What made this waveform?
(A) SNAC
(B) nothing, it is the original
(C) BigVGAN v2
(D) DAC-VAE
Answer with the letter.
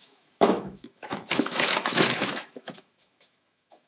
D